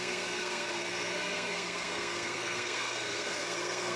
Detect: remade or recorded remade